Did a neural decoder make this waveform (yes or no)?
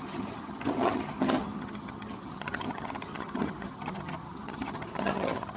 yes